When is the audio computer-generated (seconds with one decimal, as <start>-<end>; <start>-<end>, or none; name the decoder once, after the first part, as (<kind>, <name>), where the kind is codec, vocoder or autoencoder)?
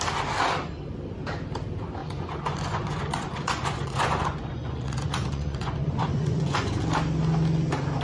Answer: 2.0-6.8 (vocoder, Vocos)